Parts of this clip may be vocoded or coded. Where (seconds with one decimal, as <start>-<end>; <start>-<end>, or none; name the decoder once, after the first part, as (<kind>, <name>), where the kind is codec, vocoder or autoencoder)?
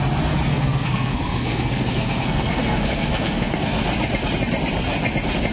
0.5-3.8 (codec, SNAC)